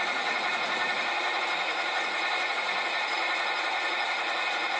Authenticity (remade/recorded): remade